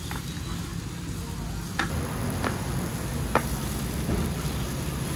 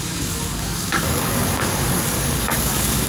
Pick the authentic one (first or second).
first